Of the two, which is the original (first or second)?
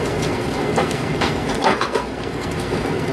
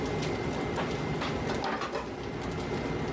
second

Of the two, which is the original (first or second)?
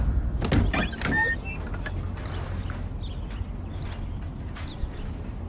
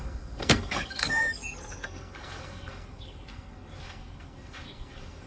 first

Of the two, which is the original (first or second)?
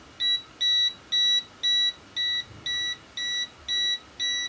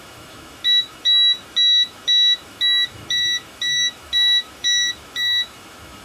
first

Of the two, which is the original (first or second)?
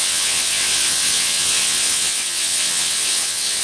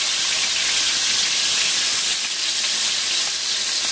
second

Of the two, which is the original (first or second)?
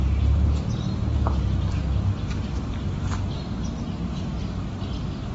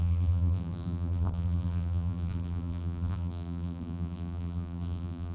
first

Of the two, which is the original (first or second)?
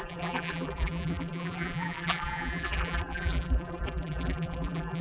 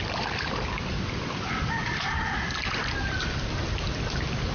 second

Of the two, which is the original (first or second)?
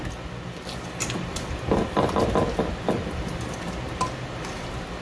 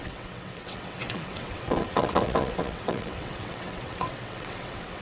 first